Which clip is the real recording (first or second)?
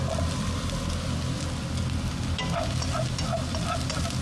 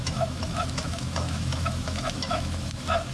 first